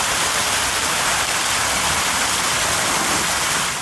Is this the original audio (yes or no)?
yes